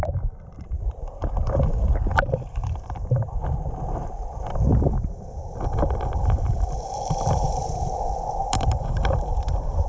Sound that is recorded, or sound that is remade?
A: remade